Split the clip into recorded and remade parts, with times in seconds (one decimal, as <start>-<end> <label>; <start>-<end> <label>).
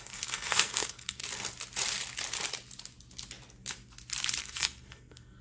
0.0-1.2 remade; 1.2-4.4 recorded; 4.4-5.4 remade